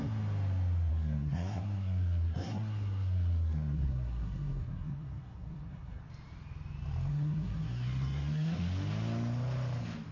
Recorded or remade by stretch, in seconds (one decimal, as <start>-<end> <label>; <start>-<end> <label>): 0.0-0.9 recorded; 0.9-6.0 remade; 6.0-7.1 recorded; 7.1-8.6 remade; 8.6-10.1 recorded